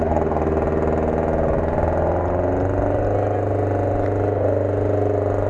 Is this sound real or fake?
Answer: real